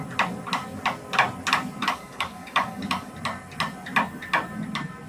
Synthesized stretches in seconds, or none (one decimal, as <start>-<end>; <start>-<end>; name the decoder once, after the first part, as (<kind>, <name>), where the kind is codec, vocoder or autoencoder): 1.8-3.1 (codec, DAC)